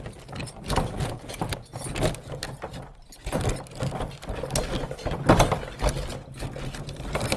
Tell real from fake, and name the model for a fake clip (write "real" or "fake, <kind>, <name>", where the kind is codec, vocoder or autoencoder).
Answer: real